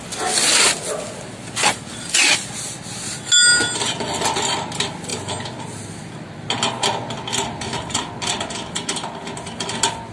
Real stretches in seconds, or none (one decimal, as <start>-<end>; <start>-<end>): 0.0-10.1